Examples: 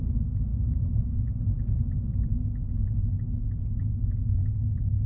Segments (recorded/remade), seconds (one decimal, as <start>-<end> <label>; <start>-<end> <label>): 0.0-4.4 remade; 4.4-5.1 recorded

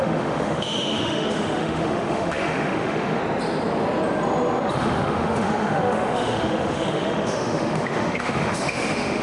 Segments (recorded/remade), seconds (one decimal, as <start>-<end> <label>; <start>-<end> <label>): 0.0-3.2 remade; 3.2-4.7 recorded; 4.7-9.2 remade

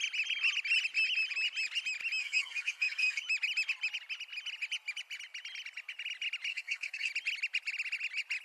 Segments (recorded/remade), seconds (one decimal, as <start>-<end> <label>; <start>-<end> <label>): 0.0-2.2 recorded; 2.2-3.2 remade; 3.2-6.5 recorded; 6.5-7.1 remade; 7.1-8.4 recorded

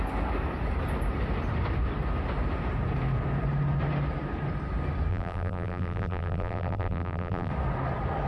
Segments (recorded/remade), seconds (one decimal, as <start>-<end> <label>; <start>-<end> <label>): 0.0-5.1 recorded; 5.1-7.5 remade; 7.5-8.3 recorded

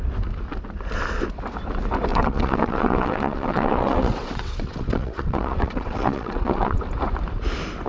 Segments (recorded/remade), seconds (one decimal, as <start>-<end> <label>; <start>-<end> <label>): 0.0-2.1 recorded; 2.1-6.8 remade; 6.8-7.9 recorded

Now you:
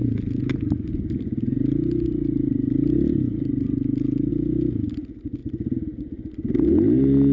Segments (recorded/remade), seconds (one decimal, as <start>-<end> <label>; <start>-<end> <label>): 0.0-7.3 recorded

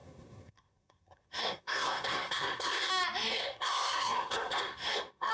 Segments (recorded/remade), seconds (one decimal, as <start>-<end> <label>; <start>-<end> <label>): 0.0-2.9 remade; 2.9-3.3 recorded; 3.3-5.3 remade